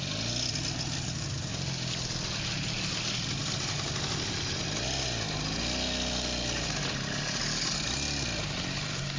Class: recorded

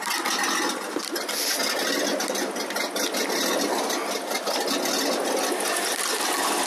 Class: recorded